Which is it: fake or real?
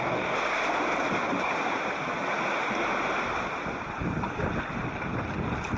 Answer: real